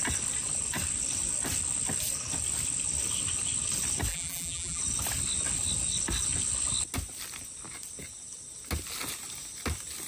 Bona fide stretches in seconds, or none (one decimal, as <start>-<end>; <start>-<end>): 0.0-4.1; 4.8-10.1